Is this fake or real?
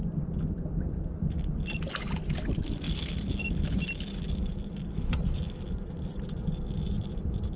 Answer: real